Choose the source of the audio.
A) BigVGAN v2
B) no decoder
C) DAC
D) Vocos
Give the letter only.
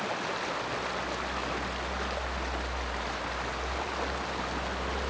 B